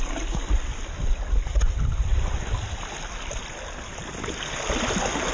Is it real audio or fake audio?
real